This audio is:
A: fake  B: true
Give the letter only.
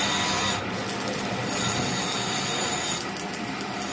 B